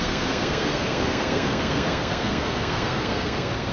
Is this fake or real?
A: fake